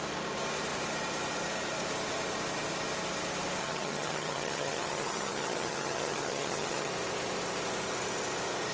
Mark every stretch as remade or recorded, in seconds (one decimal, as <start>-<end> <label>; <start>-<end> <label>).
0.0-3.6 recorded; 3.6-6.9 remade; 6.9-8.7 recorded